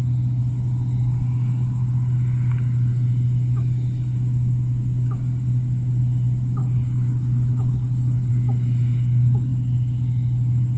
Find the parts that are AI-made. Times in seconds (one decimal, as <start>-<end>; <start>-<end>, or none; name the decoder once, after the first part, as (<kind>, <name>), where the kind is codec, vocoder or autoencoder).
6.6-8.3 (codec, HILCodec)